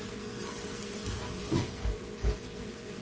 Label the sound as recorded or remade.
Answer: remade